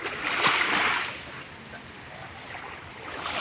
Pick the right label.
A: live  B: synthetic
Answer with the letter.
A